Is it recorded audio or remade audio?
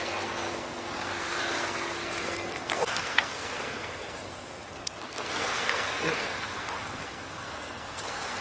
remade